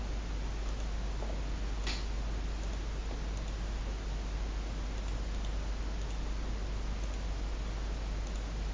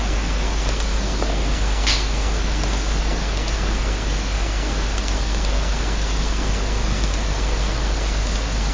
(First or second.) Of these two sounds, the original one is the first